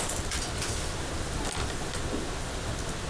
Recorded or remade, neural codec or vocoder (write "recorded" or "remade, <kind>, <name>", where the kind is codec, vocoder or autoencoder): recorded